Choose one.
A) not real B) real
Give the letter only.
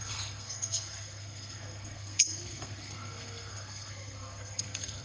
A